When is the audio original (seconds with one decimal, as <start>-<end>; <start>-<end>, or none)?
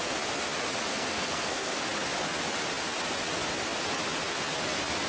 0.0-0.9; 1.8-5.1